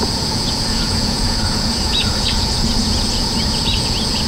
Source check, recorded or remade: remade